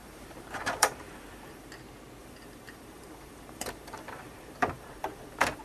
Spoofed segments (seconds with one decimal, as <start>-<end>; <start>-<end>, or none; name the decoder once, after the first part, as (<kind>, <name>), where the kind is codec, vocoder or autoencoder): 0.0-1.7 (vocoder, BigVGAN v2); 2.2-5.6